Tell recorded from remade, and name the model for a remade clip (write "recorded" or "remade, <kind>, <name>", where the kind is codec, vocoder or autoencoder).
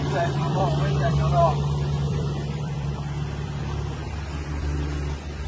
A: remade, vocoder, BigVGAN v2